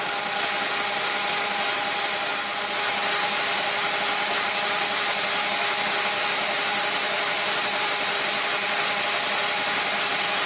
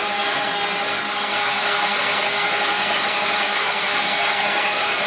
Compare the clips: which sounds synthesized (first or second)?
second